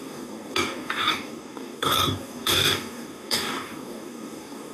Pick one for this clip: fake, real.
fake